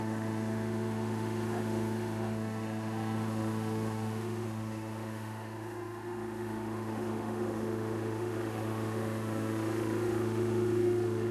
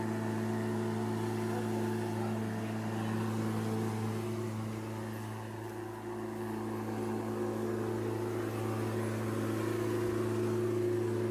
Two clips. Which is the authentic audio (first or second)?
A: second